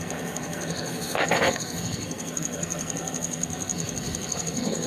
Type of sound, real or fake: fake